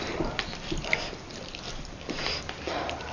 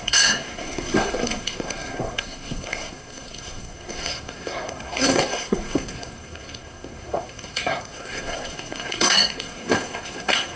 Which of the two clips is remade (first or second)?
second